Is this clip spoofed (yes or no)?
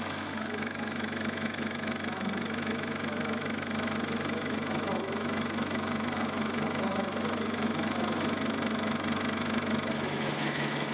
yes